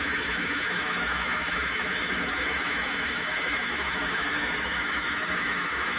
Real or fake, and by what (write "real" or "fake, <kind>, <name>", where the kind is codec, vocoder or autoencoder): fake, autoencoder, DAC-VAE